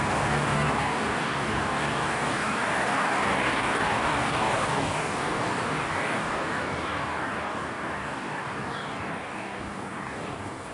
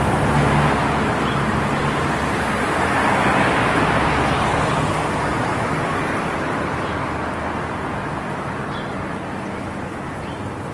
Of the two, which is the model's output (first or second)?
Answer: first